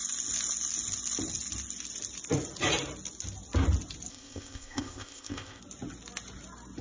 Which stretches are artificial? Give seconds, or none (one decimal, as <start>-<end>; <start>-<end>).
4.1-5.6